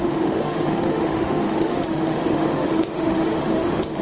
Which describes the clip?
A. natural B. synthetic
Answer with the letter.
B